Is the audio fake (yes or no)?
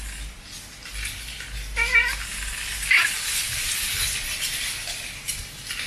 no